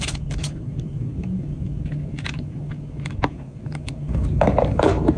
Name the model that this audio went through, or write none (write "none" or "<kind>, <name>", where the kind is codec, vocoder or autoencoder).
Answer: codec, DAC